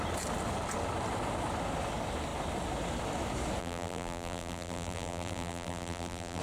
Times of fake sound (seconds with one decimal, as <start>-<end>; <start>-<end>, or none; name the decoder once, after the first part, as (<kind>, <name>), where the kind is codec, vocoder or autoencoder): 3.6-6.4 (vocoder, BigVGAN v2)